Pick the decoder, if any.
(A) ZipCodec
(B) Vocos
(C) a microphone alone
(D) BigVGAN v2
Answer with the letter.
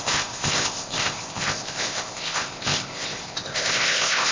A